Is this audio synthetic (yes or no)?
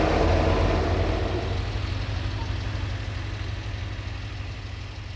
no